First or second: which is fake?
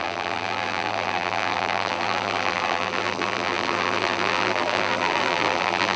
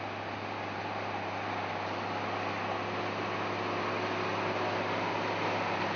first